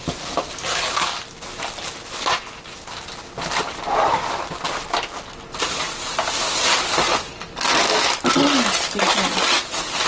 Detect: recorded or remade recorded